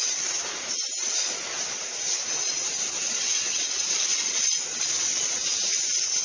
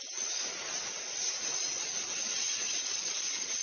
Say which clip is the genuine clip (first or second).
first